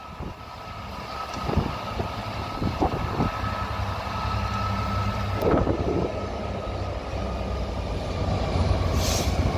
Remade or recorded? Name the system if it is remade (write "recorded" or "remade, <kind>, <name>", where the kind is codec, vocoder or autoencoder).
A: recorded